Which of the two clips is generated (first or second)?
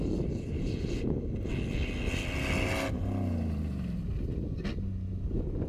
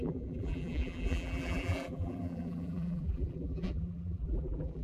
second